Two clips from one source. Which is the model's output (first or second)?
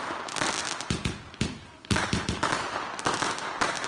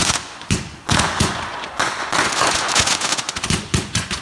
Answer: second